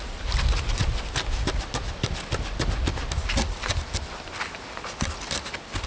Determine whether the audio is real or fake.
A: real